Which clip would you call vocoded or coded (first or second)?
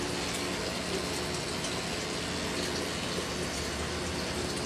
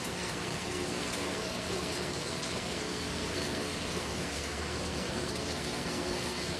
second